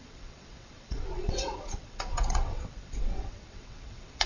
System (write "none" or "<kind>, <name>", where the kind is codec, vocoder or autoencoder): vocoder, WaveNeXt